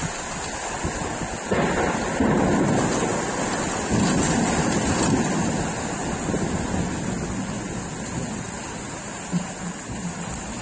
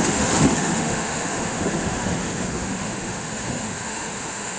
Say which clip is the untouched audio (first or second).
first